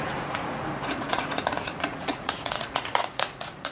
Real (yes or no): no